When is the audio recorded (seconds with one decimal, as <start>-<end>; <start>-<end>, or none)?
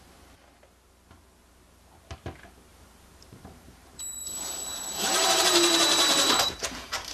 0.0-2.7